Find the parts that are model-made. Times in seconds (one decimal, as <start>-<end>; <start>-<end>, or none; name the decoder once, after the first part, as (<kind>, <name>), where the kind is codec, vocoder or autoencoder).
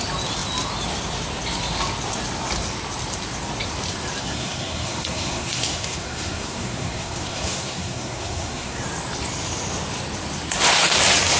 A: 4.2-8.8 (codec, SNAC)